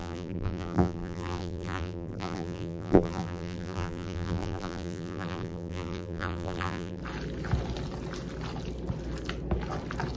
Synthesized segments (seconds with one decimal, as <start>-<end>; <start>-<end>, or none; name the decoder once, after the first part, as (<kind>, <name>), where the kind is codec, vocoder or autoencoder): 0.0-7.0 (vocoder, BigVGAN v2)